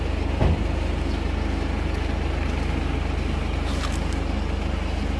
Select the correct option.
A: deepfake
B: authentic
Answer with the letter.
B